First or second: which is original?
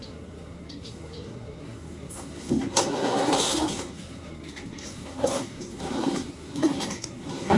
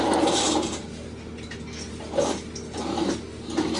second